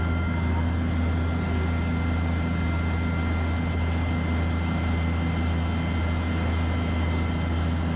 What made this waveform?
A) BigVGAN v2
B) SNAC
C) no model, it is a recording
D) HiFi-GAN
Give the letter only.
C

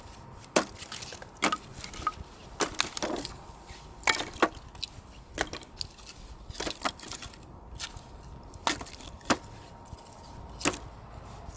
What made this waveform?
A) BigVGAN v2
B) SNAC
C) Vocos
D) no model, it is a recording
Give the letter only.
D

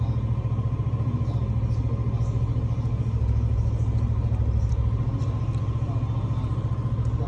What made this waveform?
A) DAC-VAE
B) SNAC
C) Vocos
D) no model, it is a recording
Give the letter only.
D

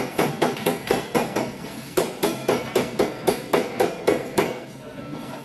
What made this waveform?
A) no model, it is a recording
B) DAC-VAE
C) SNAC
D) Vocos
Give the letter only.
C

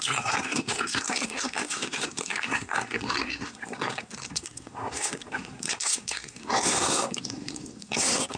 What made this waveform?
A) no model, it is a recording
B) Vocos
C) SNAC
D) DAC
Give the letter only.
C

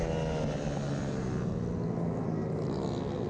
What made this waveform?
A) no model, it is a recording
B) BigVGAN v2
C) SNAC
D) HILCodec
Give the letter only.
A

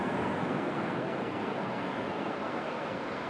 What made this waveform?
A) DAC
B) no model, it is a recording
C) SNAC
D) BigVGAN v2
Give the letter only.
C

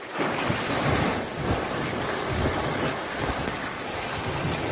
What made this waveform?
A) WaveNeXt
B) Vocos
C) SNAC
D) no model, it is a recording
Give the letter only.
D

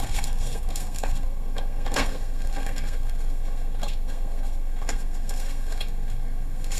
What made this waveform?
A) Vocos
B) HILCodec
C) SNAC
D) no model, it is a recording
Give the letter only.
C